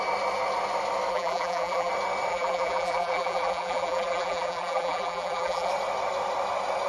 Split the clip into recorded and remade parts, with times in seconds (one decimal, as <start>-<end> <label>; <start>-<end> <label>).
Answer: 0.0-1.1 recorded; 1.1-1.9 remade; 1.9-2.3 recorded; 2.3-5.7 remade; 5.7-6.9 recorded